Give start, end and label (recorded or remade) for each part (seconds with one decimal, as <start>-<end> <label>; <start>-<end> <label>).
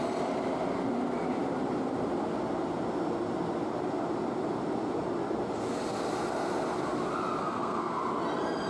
0.0-7.4 recorded; 7.4-8.0 remade; 8.0-8.7 recorded